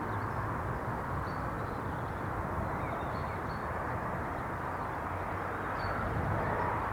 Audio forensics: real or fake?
real